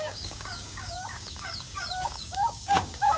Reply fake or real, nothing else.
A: fake